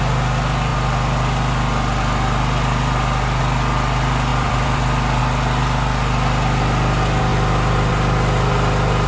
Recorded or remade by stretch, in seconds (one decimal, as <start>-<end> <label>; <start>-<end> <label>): 0.0-4.3 recorded; 4.3-5.2 remade; 5.2-7.3 recorded; 7.3-7.9 remade; 7.9-9.1 recorded